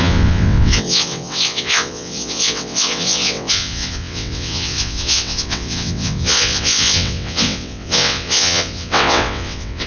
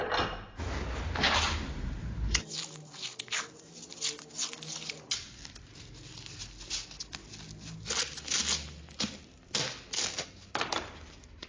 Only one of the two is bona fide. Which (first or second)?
second